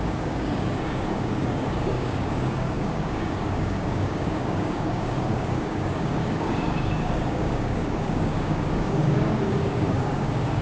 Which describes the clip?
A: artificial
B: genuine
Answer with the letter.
A